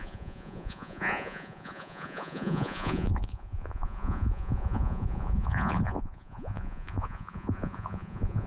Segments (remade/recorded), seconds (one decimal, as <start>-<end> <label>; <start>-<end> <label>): 0.0-8.5 remade